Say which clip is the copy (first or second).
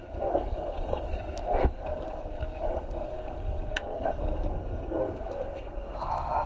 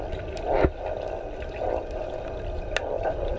first